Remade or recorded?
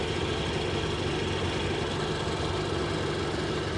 recorded